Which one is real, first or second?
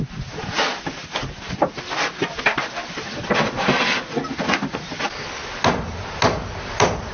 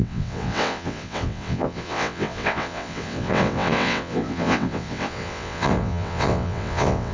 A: first